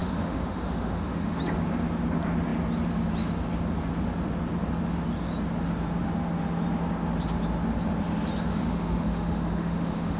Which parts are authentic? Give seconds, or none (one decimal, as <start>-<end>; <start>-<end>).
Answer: 1.4-8.5